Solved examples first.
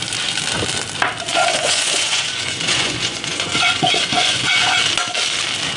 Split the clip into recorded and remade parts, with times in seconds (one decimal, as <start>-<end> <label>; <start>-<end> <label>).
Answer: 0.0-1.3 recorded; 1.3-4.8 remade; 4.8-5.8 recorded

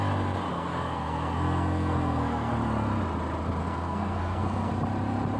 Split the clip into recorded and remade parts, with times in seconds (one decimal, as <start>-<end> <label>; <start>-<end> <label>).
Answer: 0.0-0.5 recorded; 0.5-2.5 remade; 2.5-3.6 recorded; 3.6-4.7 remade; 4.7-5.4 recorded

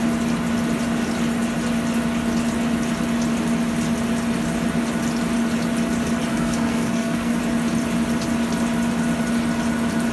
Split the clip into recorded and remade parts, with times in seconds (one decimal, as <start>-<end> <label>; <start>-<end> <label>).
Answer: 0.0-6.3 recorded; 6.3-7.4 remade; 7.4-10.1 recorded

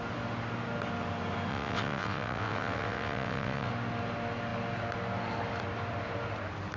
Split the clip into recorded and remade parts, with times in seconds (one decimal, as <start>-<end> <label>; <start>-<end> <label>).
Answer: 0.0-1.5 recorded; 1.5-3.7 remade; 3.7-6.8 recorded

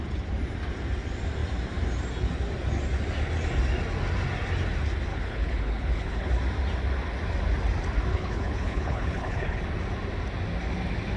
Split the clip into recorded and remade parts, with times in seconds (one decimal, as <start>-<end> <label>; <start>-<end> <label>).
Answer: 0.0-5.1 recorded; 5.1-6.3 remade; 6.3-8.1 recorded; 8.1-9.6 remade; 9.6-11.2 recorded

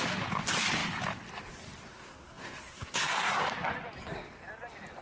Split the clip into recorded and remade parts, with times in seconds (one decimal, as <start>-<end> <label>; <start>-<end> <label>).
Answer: 0.0-1.9 recorded; 1.9-3.4 remade; 3.4-5.0 recorded